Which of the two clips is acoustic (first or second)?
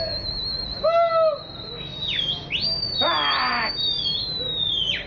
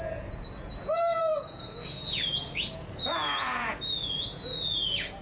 first